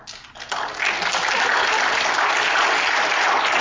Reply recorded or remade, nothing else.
recorded